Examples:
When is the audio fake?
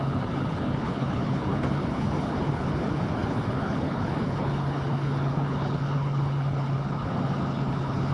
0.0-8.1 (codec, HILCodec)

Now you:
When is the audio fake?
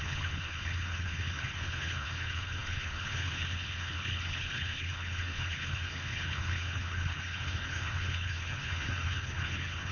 0.0-9.9 (codec, HILCodec)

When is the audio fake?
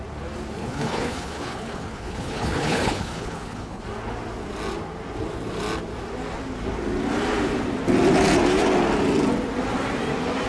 0.6-3.8 (codec, HILCodec)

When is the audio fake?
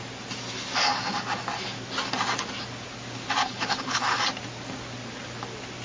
3.4-4.2 (codec, HILCodec)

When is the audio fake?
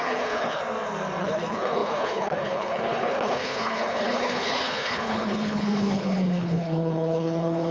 0.0-0.6 (codec, HILCodec); 1.2-7.7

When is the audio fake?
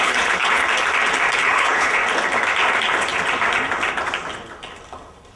0.0-0.6 (codec, HILCodec); 1.4-2.0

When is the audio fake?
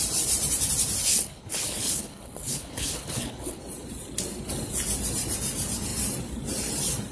1.1-3.6 (codec, HILCodec)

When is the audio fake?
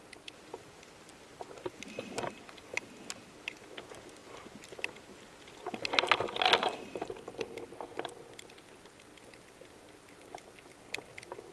none